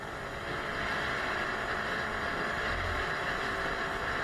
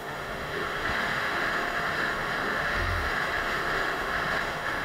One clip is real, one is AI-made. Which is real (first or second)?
first